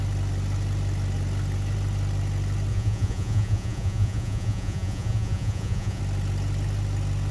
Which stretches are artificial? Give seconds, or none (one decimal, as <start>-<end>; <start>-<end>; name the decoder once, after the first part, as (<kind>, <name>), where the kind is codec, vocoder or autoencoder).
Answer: 2.7-6.0 (vocoder, Vocos)